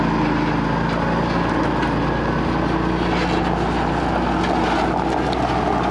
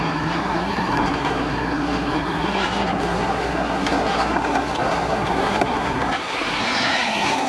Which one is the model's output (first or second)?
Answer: second